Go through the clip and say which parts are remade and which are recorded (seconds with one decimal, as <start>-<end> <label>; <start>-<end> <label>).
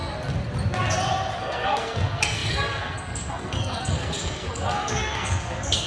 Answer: 0.0-1.4 recorded; 1.4-5.9 remade